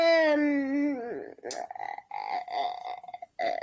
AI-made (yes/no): no